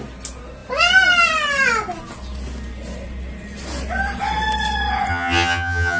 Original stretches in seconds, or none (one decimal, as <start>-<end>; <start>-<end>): 0.0-5.1